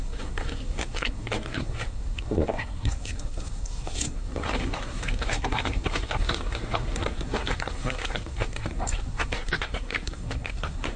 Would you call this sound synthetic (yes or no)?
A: yes